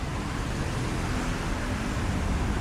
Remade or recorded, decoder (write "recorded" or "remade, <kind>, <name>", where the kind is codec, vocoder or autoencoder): remade, vocoder, BigVGAN v2